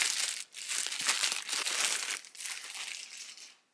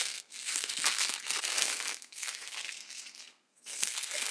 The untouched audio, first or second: first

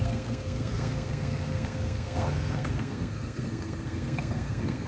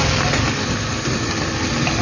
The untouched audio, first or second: second